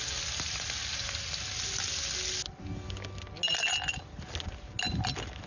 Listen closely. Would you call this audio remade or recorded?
recorded